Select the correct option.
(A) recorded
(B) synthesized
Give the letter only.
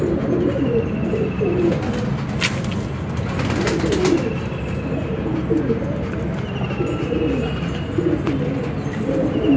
A